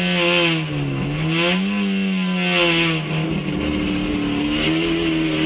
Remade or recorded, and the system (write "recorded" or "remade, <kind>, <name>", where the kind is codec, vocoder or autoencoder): recorded